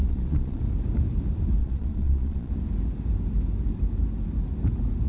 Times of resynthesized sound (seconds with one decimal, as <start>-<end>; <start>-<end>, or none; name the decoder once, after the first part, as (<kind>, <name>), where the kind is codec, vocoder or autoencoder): 0.0-0.6 (vocoder, Vocos); 1.6-2.5